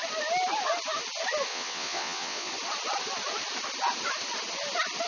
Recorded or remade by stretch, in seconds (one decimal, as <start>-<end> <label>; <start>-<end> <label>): 0.0-1.5 recorded; 1.5-2.5 remade; 2.5-5.1 recorded